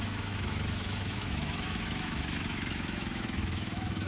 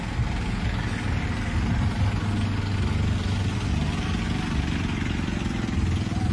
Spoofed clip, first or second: first